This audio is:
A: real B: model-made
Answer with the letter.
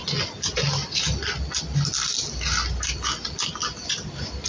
A